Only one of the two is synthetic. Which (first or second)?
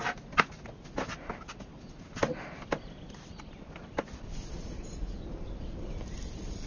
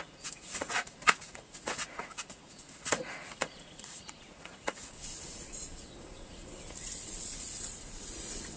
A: second